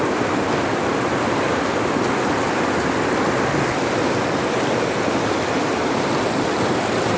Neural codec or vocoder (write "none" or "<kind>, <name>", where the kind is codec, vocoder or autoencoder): none